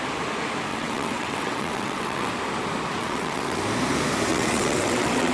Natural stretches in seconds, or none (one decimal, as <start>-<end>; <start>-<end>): 0.0-0.7; 2.3-3.0; 3.6-4.3